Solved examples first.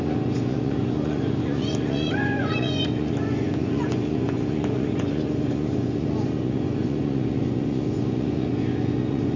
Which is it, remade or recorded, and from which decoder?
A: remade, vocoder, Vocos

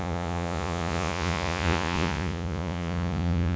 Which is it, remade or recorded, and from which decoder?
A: remade, vocoder, Vocos